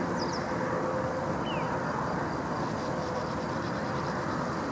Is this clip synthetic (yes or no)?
no